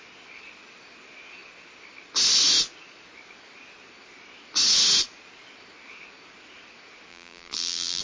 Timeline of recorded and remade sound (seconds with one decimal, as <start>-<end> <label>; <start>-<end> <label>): 0.0-7.1 recorded; 7.1-8.0 remade

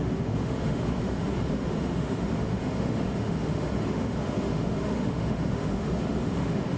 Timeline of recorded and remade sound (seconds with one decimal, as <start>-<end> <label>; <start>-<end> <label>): 0.0-6.8 remade

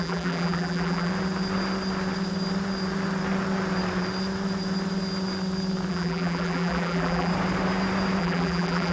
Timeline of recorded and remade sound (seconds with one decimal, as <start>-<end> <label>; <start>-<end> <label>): 0.0-1.1 remade; 1.1-5.9 recorded; 5.9-7.3 remade; 7.3-8.2 recorded; 8.2-8.9 remade

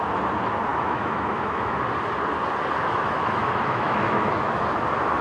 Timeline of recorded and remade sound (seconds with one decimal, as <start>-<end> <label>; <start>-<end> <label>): 0.0-0.7 recorded; 0.7-1.8 remade; 1.8-2.8 recorded; 2.8-4.6 remade; 4.6-5.2 recorded